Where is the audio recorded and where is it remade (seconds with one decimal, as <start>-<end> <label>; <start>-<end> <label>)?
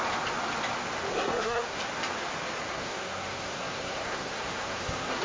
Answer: 0.0-1.1 recorded; 1.1-1.8 remade; 1.8-2.7 recorded; 2.7-5.2 remade